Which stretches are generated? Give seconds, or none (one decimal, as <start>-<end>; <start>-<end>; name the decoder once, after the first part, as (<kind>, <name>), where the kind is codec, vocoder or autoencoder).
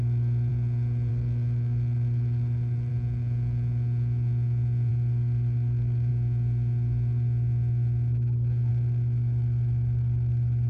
0.0-0.5 (autoencoder, DAC-VAE); 1.1-2.9; 4.9-6.1; 8.7-10.7